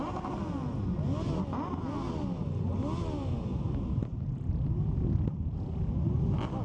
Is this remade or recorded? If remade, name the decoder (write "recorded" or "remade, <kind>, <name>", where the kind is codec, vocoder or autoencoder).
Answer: recorded